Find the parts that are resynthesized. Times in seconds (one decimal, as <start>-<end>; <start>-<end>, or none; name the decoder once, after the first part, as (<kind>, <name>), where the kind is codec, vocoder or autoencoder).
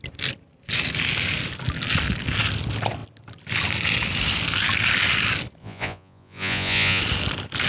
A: 5.6-7.0 (vocoder, Vocos)